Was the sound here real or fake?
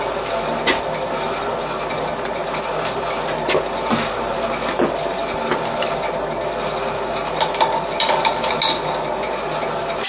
real